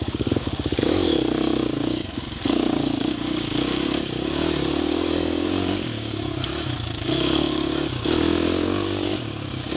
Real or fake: fake